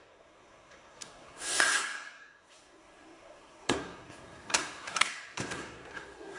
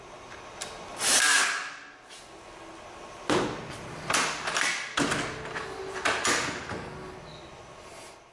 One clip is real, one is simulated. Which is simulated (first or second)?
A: first